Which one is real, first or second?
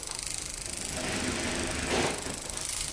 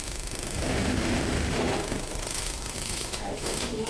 first